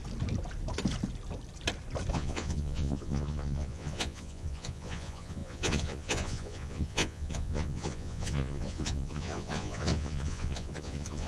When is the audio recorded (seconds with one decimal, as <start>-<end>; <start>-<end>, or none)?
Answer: 0.0-2.1